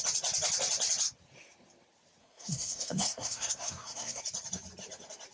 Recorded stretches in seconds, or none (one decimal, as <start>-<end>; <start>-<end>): 0.0-2.2; 4.2-5.3